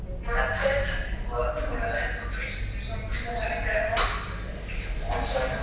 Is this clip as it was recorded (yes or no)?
yes